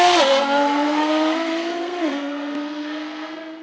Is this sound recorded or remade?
remade